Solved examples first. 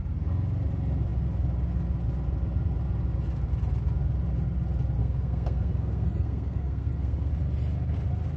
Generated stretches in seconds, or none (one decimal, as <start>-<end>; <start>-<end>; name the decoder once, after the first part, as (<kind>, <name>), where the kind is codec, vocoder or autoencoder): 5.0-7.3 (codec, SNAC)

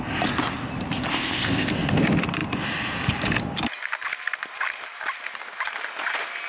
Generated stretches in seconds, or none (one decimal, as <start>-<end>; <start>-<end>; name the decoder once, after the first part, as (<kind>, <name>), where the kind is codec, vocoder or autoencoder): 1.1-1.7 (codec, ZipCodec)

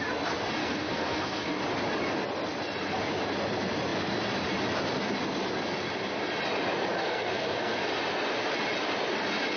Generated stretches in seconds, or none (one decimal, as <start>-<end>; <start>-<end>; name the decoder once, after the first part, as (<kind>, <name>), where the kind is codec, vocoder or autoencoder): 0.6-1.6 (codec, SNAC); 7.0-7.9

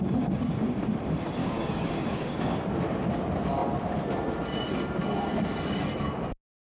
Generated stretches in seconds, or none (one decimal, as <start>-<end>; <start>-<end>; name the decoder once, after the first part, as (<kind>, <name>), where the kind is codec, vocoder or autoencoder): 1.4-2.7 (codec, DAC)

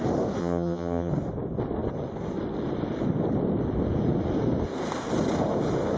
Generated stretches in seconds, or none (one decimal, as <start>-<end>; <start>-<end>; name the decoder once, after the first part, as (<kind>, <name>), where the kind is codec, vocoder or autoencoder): 0.4-1.1 (vocoder, HiFi-GAN)

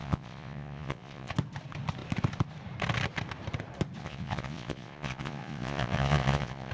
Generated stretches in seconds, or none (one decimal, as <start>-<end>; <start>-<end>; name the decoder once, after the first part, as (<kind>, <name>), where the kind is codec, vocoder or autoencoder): 0.0-1.3 (vocoder, Vocos); 4.0-6.7

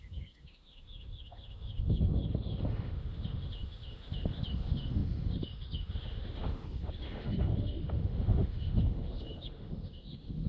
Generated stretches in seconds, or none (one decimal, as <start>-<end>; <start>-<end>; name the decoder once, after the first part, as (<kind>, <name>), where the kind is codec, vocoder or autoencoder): 0.0-10.5 (autoencoder, DAC-VAE)

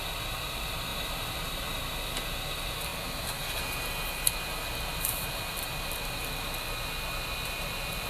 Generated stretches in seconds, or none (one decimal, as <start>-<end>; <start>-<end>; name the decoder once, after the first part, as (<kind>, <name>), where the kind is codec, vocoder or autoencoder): 0.9-1.8 (vocoder, BigVGAN v2)